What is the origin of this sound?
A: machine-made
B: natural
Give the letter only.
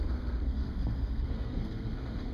A